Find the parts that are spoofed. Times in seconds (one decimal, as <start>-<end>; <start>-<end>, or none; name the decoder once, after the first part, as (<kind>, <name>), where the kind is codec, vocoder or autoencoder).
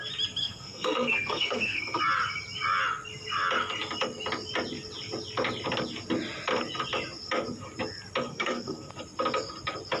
0.4-2.0 (codec, SNAC); 8.3-8.9